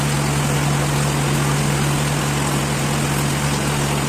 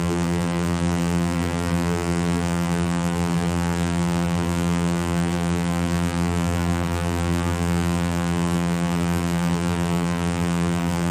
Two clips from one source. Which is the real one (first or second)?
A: first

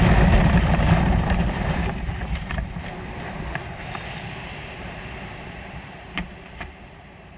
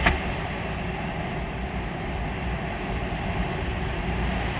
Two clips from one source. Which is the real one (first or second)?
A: second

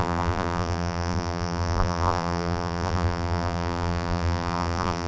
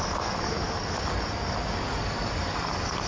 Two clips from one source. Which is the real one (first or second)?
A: second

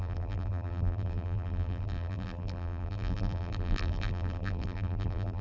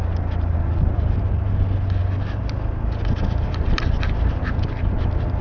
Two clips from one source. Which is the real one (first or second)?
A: second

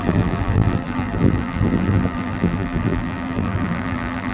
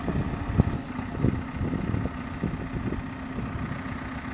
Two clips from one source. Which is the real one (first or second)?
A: second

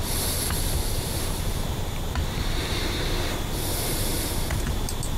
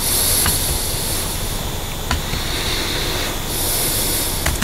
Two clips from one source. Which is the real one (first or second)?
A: second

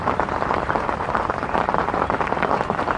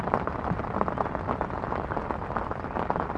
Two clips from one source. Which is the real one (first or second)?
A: second